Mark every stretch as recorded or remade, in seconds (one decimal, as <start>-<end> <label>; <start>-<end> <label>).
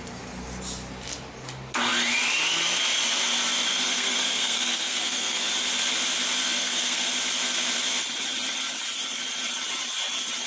0.0-3.7 recorded; 3.7-5.5 remade; 5.5-6.4 recorded; 6.4-7.1 remade; 7.1-10.5 recorded